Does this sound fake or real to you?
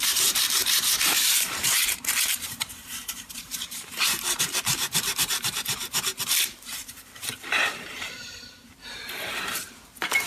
fake